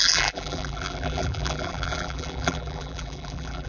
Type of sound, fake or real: fake